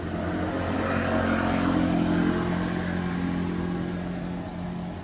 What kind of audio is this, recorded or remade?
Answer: recorded